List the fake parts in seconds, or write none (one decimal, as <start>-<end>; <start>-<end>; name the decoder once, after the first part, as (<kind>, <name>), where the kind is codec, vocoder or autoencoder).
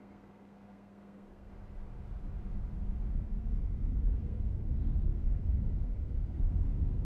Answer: 0.0-1.5 (codec, SNAC); 3.1-7.0